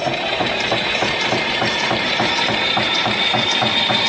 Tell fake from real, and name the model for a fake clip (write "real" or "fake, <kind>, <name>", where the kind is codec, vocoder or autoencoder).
fake, vocoder, BigVGAN v2